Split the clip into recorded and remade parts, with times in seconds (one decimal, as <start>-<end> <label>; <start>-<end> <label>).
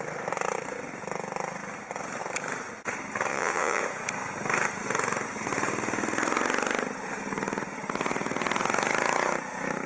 0.0-3.3 recorded; 3.3-3.8 remade; 3.8-9.9 recorded